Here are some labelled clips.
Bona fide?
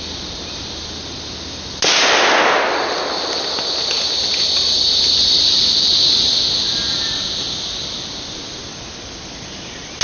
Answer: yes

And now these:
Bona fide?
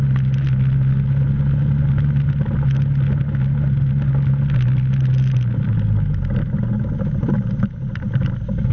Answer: yes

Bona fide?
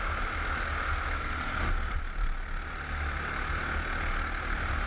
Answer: yes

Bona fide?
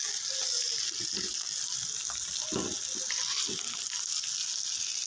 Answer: yes